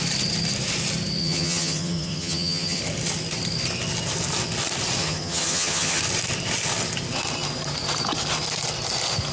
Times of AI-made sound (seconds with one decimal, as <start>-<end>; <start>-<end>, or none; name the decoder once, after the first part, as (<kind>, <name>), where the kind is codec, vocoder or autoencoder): 1.2-2.8 (vocoder, HiFi-GAN); 5.0-6.0